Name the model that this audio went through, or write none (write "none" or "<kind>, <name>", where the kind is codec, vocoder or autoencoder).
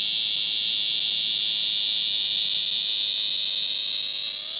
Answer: none